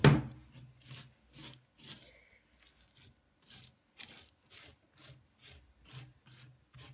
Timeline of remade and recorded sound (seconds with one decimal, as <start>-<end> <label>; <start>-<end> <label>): 0.0-6.9 recorded